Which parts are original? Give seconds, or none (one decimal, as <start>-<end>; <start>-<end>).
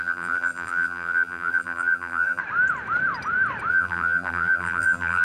2.4-3.7